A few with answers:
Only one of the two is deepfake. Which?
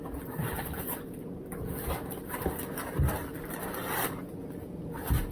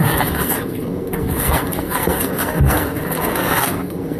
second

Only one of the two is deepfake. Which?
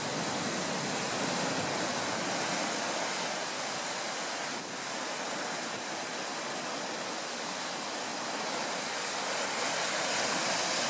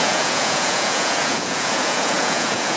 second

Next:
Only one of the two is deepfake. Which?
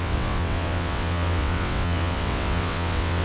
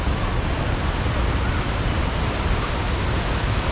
first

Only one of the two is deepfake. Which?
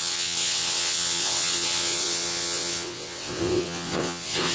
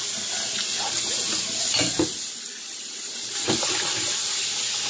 first